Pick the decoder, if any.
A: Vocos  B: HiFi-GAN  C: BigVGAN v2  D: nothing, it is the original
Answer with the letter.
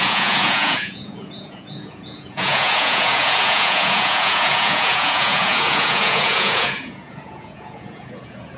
A